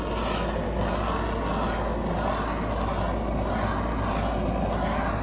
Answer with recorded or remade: recorded